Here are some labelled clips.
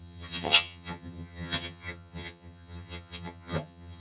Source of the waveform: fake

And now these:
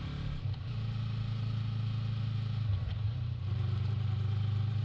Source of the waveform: real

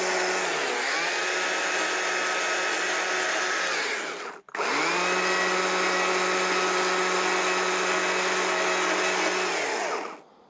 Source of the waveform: real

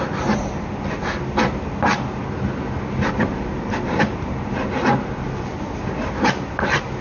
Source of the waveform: real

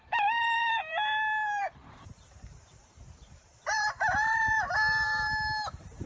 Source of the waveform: fake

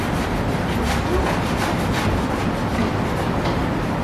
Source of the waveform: real